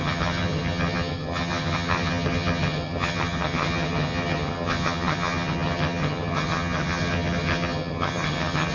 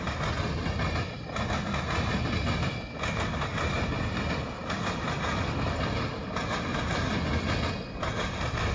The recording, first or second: second